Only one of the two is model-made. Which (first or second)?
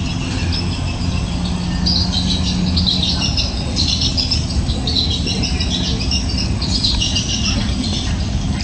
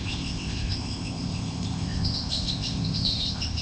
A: second